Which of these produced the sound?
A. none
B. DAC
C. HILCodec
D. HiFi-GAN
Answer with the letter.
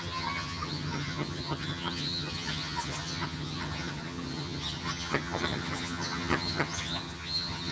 D